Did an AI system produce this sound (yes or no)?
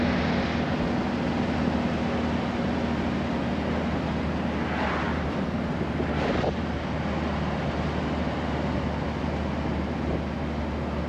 no